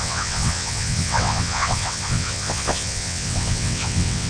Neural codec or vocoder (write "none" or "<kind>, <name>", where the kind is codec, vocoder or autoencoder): vocoder, WaveNeXt